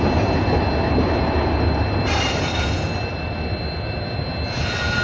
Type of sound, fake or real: real